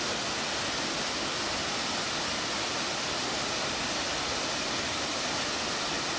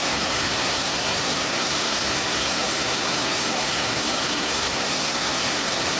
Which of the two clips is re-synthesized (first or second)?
second